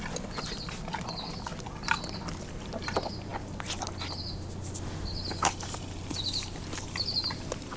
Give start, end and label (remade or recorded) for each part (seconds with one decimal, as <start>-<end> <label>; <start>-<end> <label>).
0.0-7.8 recorded